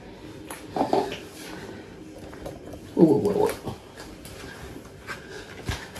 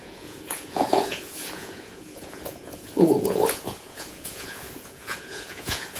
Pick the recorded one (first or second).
first